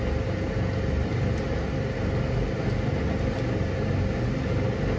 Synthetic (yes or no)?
no